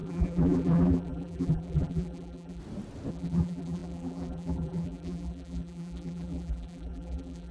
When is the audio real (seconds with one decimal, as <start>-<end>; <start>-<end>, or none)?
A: 2.6-3.1